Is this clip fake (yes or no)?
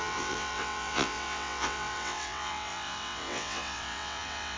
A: yes